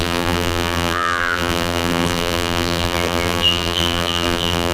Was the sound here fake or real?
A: fake